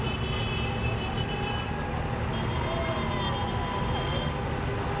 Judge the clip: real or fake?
real